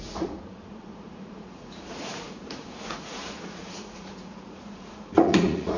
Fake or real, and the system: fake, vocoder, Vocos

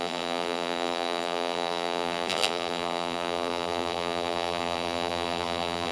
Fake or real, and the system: fake, vocoder, BigVGAN v2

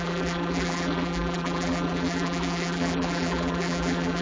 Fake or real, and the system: fake, vocoder, BigVGAN v2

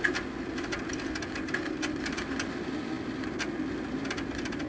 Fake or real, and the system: real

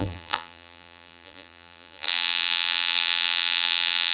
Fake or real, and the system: fake, vocoder, BigVGAN v2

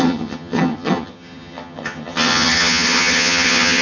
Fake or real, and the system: fake, vocoder, HiFi-GAN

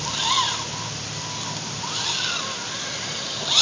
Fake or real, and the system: real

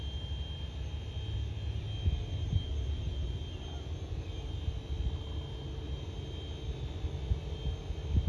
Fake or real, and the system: real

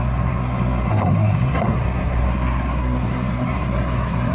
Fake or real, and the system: fake, codec, SNAC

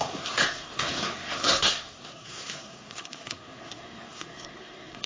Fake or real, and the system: fake, codec, SNAC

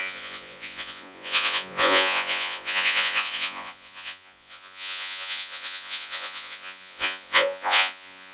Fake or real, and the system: fake, vocoder, Vocos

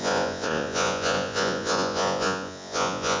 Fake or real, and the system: fake, vocoder, Vocos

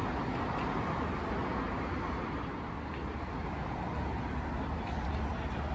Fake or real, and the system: real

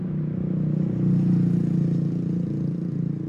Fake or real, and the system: real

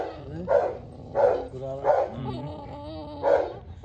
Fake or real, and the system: real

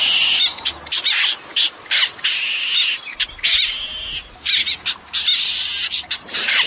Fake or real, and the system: real